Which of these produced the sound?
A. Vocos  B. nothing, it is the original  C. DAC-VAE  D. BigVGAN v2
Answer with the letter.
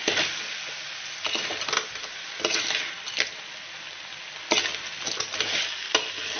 B